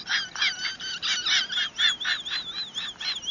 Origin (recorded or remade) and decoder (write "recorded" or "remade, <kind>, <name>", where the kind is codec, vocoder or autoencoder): recorded